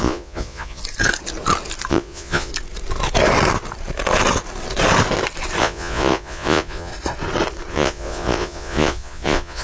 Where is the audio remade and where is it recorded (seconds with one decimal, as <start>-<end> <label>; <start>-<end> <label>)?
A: 0.0-0.8 remade; 0.8-1.9 recorded; 1.9-2.5 remade; 2.5-5.6 recorded; 5.6-6.9 remade; 6.9-7.7 recorded; 7.7-9.6 remade